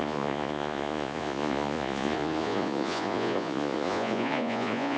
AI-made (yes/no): yes